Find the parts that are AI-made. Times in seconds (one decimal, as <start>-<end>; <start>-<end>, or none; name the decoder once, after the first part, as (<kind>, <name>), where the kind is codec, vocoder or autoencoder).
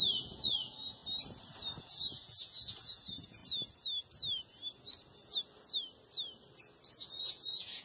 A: 0.0-1.0 (vocoder, Vocos); 1.8-3.4; 6.9-7.8